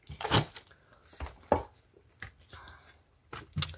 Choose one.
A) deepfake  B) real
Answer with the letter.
B